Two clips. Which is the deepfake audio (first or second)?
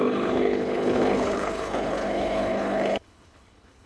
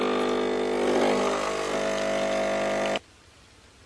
first